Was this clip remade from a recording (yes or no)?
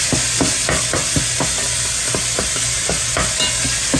no